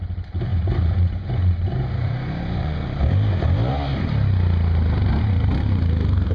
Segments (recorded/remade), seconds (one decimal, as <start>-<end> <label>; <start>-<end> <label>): 0.0-0.5 recorded; 0.5-3.0 remade; 3.0-6.3 recorded